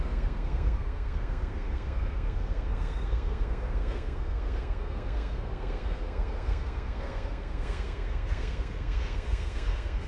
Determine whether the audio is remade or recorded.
remade